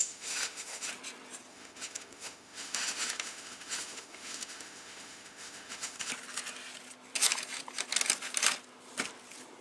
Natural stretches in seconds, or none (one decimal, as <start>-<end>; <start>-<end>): 0.9-1.5; 6.1-9.6